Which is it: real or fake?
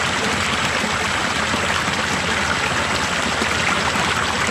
real